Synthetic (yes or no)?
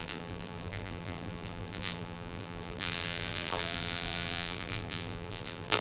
yes